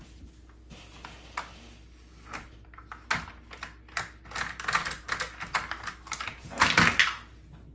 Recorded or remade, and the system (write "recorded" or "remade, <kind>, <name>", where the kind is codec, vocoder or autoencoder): recorded